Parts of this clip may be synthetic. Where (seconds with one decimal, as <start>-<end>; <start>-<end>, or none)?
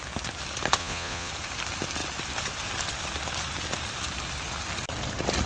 0.8-1.3